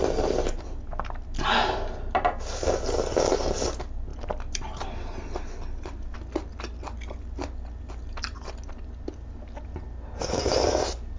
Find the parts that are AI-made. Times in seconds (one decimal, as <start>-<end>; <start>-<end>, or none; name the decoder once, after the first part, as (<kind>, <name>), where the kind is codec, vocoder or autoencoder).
none